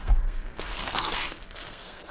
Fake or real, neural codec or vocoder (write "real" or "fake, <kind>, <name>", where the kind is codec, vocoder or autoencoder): fake, codec, SNAC